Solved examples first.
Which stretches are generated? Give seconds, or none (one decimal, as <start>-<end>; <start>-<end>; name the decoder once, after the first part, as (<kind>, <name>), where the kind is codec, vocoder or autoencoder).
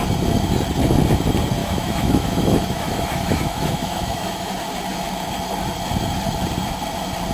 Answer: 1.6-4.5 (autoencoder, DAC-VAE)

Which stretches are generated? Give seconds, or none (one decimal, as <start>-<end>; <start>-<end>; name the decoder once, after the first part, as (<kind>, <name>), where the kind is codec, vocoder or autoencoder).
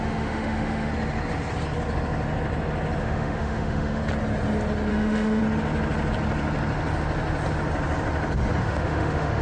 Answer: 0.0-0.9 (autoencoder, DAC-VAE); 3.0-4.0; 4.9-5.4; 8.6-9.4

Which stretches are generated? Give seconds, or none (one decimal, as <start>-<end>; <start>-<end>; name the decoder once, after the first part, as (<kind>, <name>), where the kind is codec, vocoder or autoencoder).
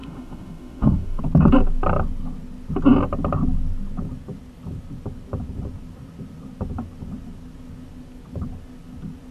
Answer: 0.0-1.2 (autoencoder, DAC-VAE)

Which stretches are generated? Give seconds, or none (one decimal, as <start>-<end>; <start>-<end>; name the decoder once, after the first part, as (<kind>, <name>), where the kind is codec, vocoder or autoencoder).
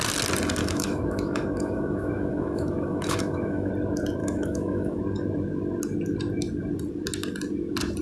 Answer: 0.6-3.7 (autoencoder, DAC-VAE); 4.2-5.0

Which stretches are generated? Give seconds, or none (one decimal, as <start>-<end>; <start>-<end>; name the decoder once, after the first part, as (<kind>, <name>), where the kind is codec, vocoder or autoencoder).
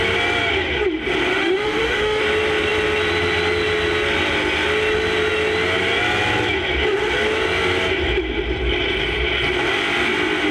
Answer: 1.3-2.2 (autoencoder, DAC-VAE)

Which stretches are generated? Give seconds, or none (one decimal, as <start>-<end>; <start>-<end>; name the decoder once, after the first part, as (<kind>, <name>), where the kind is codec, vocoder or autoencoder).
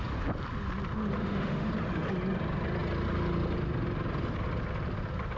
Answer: 1.2-1.7 (autoencoder, DAC-VAE)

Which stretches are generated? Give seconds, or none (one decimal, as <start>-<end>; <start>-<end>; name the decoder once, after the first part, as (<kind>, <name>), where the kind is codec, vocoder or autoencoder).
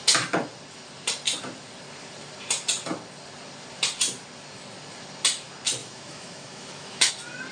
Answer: 5.8-7.1 (autoencoder, DAC-VAE)